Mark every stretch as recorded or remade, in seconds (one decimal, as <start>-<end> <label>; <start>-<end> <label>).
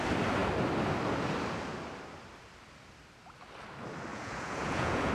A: 0.0-4.1 recorded; 4.1-5.1 remade